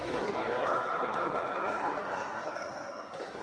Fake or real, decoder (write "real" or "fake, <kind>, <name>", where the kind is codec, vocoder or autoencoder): fake, codec, SNAC